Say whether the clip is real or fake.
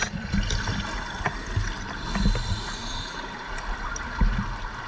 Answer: real